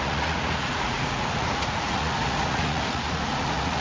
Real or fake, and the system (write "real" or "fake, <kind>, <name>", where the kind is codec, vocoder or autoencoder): fake, vocoder, Vocos